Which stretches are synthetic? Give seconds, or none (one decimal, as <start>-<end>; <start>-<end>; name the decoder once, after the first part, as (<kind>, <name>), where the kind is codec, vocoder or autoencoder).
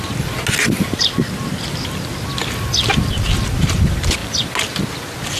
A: none